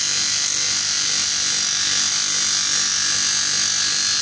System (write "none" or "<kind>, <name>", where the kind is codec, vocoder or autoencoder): none